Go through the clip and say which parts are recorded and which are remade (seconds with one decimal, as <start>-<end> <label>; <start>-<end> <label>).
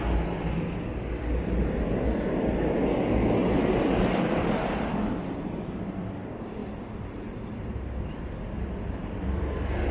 0.0-9.9 recorded